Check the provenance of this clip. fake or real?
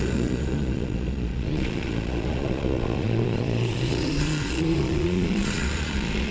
fake